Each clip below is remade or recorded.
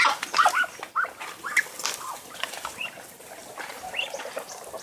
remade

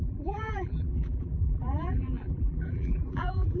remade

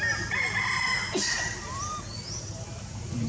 recorded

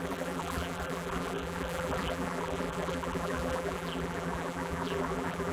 remade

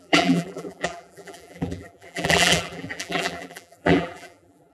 remade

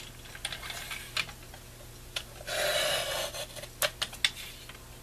recorded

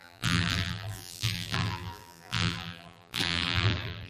remade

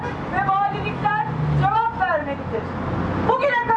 recorded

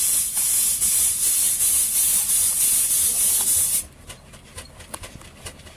recorded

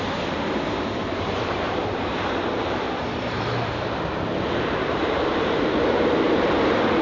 remade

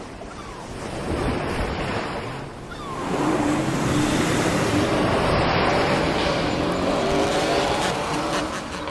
recorded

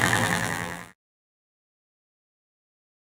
remade